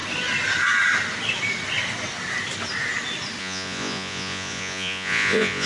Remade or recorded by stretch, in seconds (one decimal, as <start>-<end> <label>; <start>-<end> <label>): 0.0-3.4 recorded; 3.4-5.7 remade